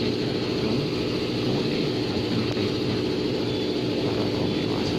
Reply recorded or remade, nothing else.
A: recorded